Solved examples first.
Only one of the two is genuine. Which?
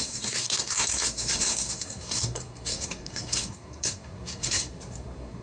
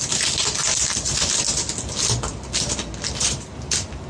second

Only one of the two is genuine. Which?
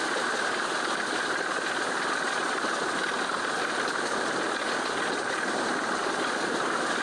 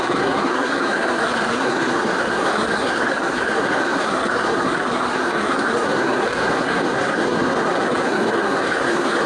first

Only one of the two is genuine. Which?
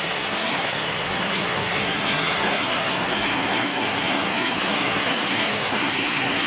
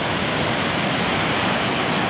second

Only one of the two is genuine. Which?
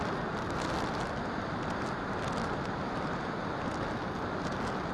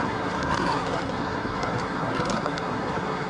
first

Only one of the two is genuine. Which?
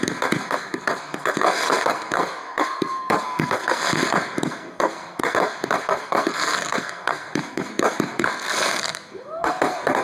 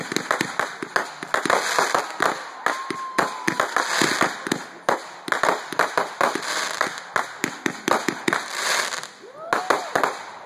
second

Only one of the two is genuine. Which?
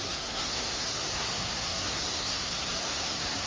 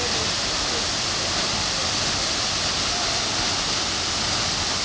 second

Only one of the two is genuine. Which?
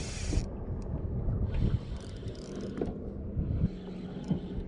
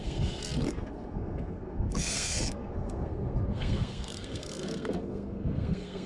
first